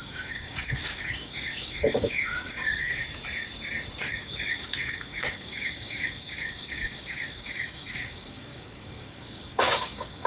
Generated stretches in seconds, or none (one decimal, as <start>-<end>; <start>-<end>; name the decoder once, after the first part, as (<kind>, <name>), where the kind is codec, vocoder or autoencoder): 0.0-3.0 (codec, DAC); 4.0-10.3